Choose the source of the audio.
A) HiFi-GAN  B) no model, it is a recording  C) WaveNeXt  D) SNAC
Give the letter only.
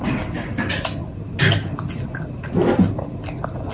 B